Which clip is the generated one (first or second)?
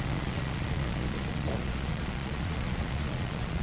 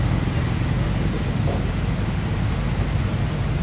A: first